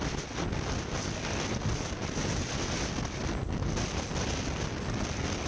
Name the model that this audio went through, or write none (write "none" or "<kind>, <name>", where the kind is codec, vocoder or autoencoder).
none